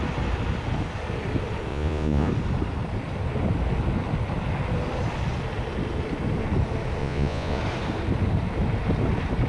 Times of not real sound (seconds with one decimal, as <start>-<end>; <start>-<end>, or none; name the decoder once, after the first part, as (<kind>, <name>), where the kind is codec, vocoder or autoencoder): 1.7-2.3 (vocoder, Vocos); 7.0-7.6